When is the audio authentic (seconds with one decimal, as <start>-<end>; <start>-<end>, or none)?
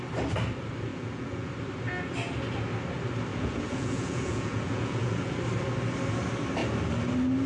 0.0-0.9; 1.5-3.3; 5.4-7.5